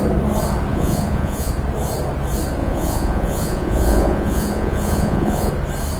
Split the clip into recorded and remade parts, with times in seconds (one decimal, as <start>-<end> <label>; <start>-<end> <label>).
0.0-0.7 recorded; 0.7-1.5 remade; 1.5-2.6 recorded; 2.6-5.5 remade; 5.5-6.0 recorded

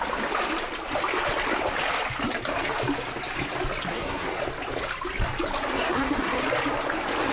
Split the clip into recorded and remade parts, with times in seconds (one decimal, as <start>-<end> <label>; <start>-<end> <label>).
0.0-3.9 recorded; 3.9-4.4 remade; 4.4-5.7 recorded; 5.7-6.4 remade; 6.4-7.3 recorded